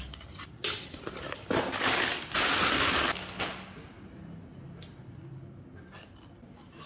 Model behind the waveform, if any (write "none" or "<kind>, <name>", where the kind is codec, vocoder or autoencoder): none